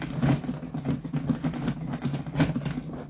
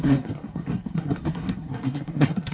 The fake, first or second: second